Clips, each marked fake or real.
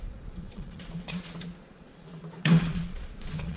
fake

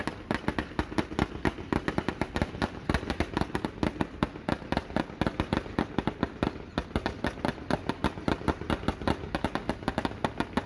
real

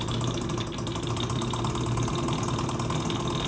real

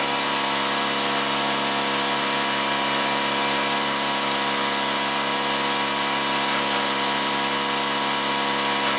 real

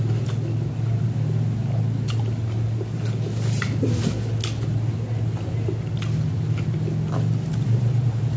real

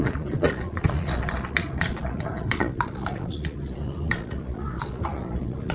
fake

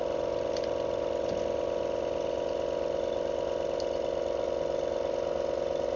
real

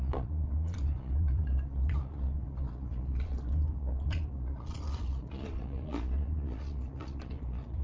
fake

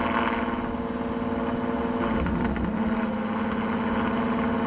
real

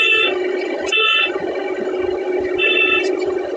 real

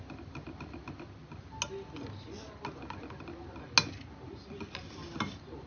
real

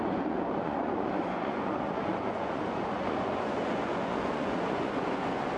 fake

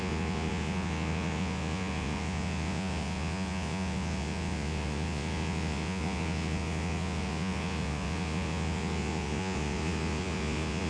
fake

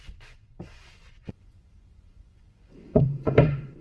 fake